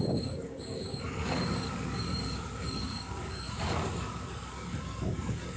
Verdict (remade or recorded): remade